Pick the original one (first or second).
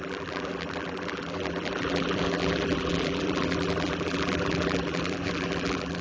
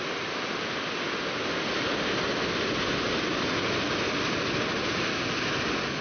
second